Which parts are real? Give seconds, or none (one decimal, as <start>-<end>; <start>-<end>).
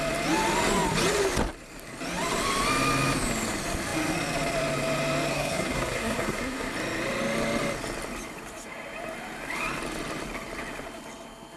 0.0-5.3; 6.7-11.6